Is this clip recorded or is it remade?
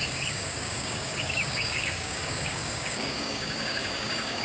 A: remade